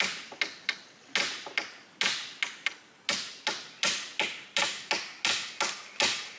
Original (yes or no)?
yes